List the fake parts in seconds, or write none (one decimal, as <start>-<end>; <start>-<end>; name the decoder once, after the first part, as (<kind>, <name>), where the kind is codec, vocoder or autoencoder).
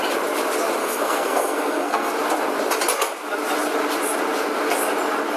0.8-2.1 (codec, SNAC)